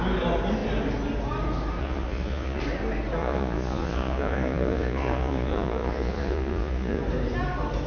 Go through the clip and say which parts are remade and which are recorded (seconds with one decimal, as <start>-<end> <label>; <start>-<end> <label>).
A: 0.0-1.8 recorded; 1.8-2.6 remade; 2.6-3.2 recorded; 3.2-7.0 remade; 7.0-7.9 recorded